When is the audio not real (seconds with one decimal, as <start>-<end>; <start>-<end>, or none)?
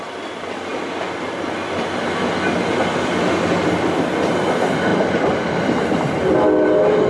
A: none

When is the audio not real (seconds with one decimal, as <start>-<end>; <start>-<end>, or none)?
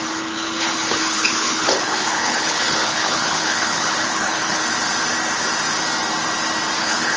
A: 0.0-4.6; 6.8-7.2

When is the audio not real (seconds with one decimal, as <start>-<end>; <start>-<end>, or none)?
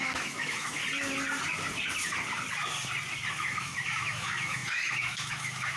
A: 0.0-0.8; 3.3-5.8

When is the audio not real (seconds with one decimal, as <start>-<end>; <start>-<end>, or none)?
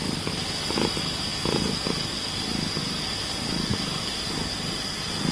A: none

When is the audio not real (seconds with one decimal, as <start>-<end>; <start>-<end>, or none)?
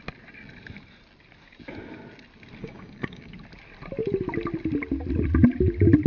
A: 2.6-3.3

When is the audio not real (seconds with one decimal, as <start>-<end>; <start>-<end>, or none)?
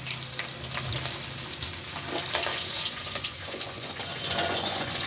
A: 2.5-5.1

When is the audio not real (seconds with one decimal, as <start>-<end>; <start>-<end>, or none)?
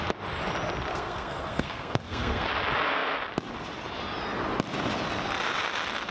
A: 0.9-2.5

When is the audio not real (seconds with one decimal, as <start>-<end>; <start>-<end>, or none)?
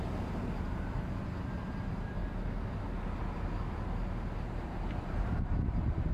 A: 0.0-2.2; 4.7-6.1